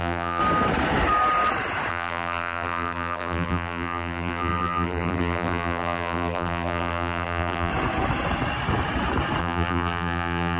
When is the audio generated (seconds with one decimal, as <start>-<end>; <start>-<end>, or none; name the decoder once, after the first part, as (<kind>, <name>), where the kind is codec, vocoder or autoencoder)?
0.0-0.4 (vocoder, BigVGAN v2); 1.9-7.7; 9.4-10.6